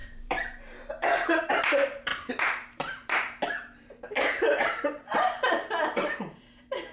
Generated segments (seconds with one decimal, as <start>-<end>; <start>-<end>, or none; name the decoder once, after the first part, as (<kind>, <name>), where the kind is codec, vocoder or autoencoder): 0.0-6.9 (vocoder, BigVGAN v2)